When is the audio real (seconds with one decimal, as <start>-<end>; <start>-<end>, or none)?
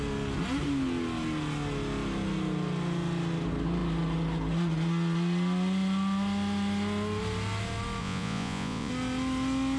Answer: 0.0-8.0; 8.9-9.8